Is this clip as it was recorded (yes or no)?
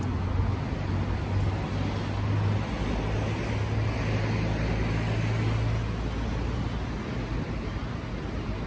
yes